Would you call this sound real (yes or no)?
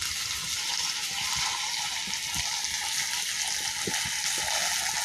yes